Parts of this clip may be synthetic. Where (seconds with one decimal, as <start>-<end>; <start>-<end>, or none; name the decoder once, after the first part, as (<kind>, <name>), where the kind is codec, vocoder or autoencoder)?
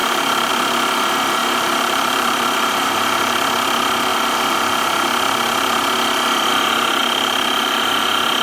0.0-0.5 (vocoder, BigVGAN v2); 1.4-2.8; 7.0-8.0